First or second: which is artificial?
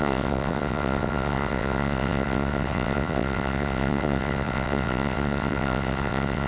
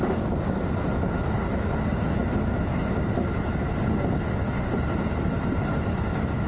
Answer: first